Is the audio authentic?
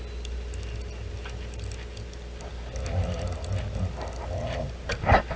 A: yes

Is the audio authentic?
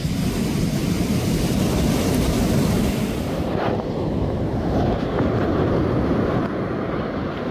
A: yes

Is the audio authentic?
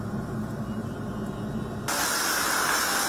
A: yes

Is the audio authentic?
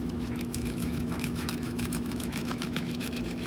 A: no